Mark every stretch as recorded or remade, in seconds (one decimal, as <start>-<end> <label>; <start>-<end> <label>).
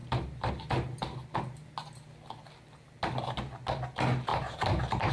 0.0-0.5 remade; 0.5-4.3 recorded; 4.3-5.1 remade